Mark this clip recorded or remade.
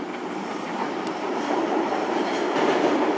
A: remade